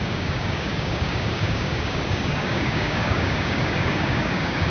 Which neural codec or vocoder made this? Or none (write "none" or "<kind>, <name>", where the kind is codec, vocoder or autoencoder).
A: codec, DAC